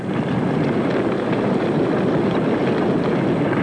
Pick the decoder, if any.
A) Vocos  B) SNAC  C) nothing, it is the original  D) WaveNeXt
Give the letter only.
C